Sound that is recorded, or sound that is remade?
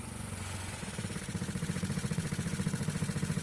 remade